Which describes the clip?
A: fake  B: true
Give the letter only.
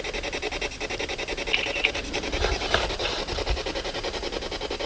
B